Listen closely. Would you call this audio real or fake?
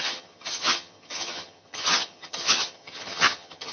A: fake